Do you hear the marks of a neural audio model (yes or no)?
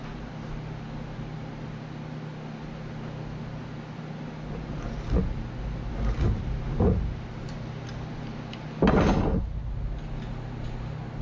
no